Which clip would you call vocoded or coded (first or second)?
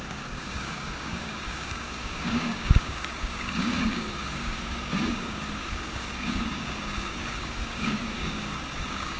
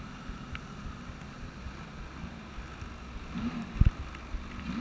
first